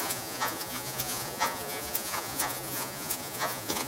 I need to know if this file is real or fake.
fake